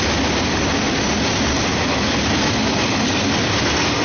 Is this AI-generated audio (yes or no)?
no